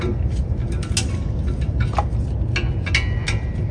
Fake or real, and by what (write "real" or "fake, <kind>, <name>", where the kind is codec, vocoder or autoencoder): real